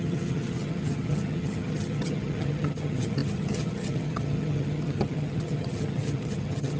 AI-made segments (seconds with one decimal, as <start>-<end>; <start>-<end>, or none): 0.0-6.8